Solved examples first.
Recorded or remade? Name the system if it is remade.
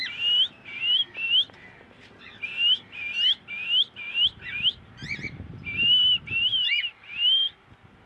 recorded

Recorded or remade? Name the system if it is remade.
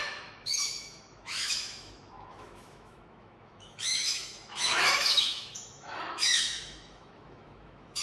remade, autoencoder, DAC-VAE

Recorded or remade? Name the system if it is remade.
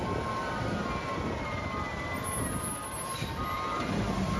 recorded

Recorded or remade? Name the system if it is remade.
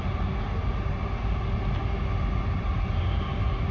recorded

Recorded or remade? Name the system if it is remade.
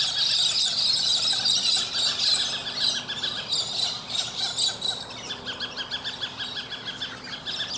recorded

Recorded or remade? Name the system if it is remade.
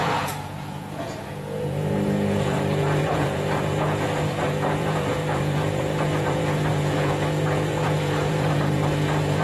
remade, vocoder, Vocos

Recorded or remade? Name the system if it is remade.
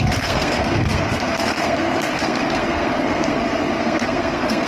remade, codec, SNAC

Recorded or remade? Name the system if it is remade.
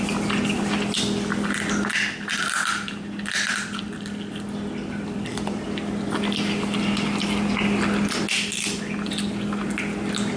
recorded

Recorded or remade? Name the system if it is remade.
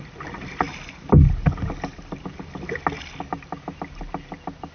recorded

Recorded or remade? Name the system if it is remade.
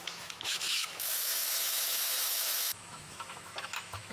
remade, autoencoder, DAC-VAE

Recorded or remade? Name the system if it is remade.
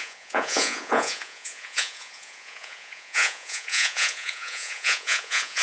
remade, vocoder, Vocos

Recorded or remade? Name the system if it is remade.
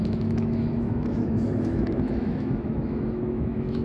remade, autoencoder, DAC-VAE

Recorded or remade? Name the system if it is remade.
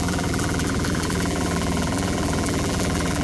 remade, vocoder, BigVGAN v2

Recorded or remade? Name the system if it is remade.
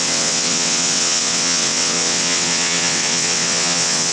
remade, vocoder, WaveNeXt